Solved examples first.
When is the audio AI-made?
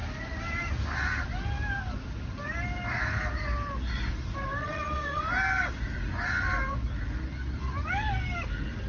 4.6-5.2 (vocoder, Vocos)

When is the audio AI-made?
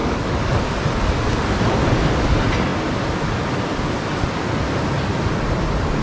0.0-0.6 (codec, DAC)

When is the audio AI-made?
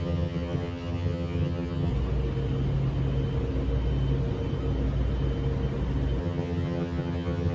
0.0-1.9 (vocoder, HiFi-GAN); 6.2-7.5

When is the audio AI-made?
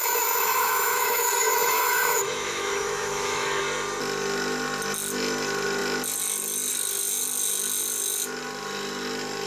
0.0-3.6 (autoencoder, DAC-VAE)